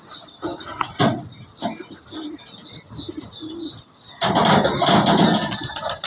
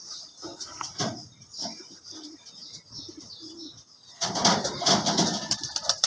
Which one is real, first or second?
first